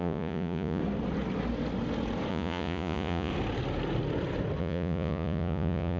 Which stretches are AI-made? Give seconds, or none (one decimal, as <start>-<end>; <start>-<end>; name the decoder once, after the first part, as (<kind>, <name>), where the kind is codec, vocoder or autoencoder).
0.0-0.8 (vocoder, Vocos); 2.3-3.3; 4.6-6.0